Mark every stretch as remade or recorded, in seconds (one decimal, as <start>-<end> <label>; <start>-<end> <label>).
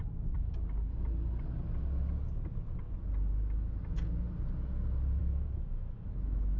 0.0-5.2 recorded; 5.2-6.6 remade